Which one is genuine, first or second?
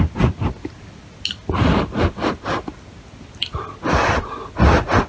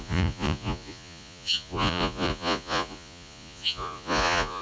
first